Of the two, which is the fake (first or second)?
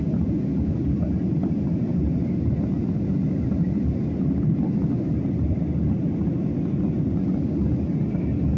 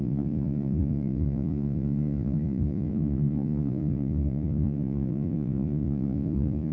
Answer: second